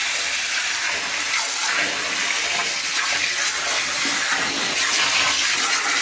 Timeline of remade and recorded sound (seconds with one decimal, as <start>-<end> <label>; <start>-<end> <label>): 0.0-6.0 recorded